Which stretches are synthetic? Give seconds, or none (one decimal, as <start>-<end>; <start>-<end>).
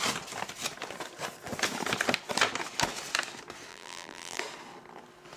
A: 3.7-4.4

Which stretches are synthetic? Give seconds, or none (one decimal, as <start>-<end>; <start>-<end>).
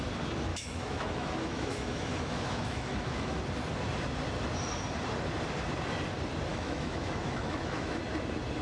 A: 0.5-3.4; 6.5-8.0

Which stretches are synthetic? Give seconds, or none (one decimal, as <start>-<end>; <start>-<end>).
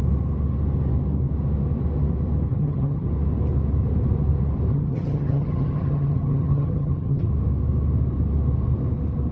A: 2.5-3.1; 4.7-7.3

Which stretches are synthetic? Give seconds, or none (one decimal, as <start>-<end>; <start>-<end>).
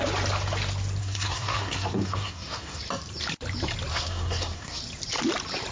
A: 1.0-2.8; 3.9-4.8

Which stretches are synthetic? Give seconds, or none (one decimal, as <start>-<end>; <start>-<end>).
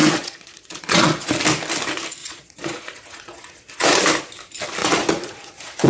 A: 0.0-1.3; 2.2-4.0; 4.8-5.9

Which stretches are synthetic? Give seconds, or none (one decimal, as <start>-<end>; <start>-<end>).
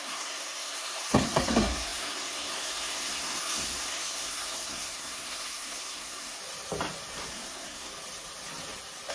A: 0.0-6.4; 7.3-7.9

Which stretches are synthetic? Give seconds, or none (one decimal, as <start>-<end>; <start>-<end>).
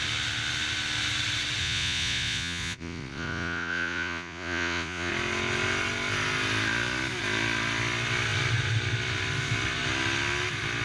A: 1.6-5.1